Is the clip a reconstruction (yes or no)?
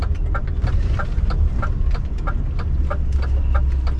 no